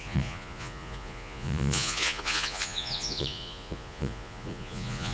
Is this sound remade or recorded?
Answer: remade